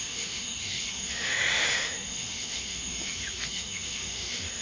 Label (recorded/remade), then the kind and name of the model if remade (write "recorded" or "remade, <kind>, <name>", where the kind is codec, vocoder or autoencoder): remade, autoencoder, DAC-VAE